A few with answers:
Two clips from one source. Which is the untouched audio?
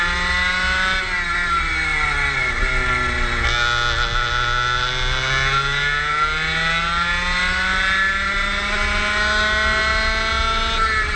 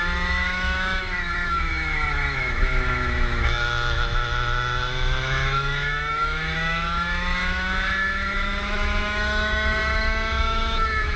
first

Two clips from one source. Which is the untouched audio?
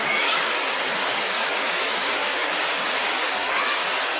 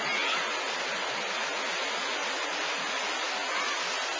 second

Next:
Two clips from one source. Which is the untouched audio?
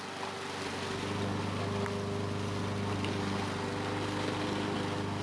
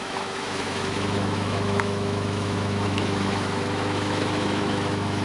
first